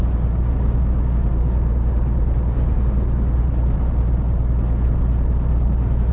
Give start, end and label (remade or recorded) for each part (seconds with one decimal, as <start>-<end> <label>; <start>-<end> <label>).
0.0-6.1 recorded